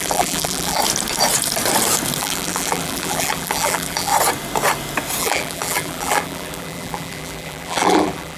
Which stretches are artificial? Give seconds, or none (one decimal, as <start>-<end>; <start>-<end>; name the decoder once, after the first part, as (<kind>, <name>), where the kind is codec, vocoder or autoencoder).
0.0-0.8 (vocoder, BigVGAN v2); 2.2-4.1; 5.2-8.4

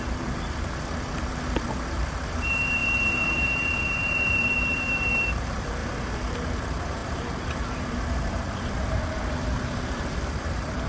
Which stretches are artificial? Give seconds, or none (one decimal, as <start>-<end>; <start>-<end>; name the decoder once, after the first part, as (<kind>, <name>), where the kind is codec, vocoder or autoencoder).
0.0-5.8 (vocoder, BigVGAN v2); 6.3-10.9

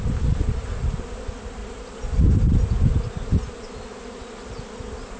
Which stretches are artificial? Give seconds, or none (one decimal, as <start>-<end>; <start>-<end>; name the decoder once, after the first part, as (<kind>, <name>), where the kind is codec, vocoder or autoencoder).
0.0-1.6 (vocoder, BigVGAN v2); 4.7-5.2